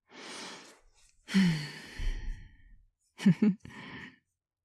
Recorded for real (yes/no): yes